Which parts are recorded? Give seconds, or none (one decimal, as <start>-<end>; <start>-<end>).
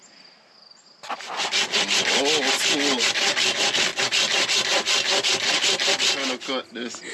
0.0-7.1